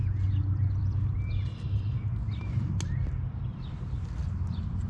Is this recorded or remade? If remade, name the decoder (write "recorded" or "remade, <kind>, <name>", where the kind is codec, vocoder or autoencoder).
recorded